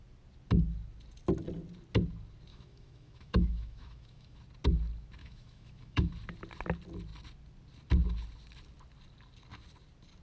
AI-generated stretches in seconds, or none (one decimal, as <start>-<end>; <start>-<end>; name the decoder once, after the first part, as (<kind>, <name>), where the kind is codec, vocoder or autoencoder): 2.5-4.4 (autoencoder, DAC-VAE); 5.2-6.1